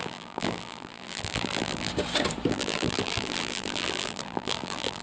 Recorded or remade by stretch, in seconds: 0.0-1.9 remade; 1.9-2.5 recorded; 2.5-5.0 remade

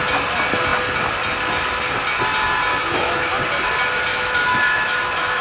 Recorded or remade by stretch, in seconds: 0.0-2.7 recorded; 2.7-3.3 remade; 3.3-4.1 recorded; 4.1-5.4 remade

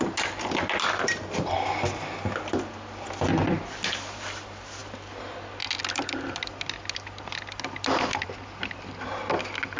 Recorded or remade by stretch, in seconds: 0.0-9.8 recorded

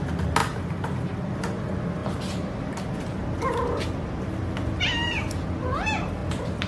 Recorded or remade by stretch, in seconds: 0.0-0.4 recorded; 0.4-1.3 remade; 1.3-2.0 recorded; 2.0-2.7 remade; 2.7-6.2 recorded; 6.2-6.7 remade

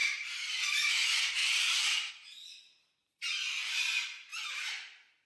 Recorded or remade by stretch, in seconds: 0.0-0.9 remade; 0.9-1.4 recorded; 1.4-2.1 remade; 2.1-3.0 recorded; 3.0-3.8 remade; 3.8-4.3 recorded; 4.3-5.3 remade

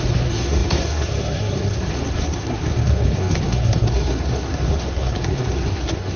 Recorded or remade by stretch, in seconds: 0.0-6.2 remade

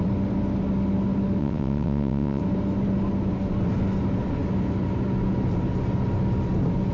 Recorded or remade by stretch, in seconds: 0.0-1.4 recorded; 1.4-2.4 remade; 2.4-6.9 recorded

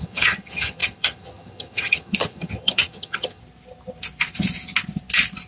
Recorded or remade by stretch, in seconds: 0.0-3.4 remade; 3.4-5.5 recorded